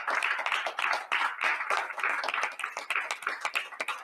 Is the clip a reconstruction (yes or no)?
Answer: no